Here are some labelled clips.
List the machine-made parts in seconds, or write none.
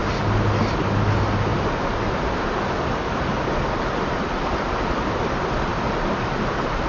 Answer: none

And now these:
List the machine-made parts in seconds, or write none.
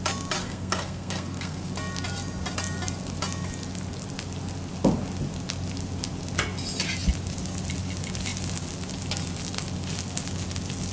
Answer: 0.4-1.7 (codec, SNAC)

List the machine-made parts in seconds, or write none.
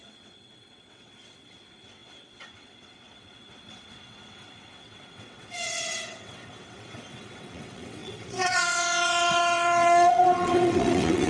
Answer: 0.0-11.3 (vocoder, WaveNeXt)